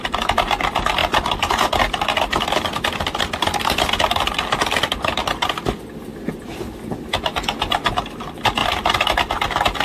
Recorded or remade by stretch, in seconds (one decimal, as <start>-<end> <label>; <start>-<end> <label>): 0.0-9.8 recorded